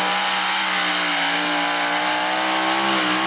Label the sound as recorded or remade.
recorded